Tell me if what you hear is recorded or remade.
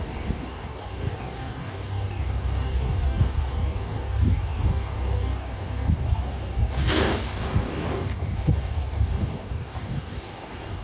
remade